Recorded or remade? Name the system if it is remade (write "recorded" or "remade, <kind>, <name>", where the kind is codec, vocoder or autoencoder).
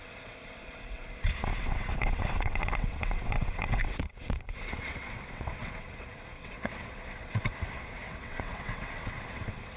remade, vocoder, WaveNeXt